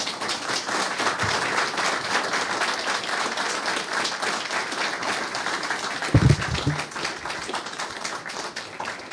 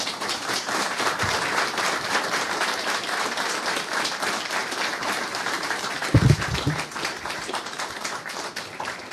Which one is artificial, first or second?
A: second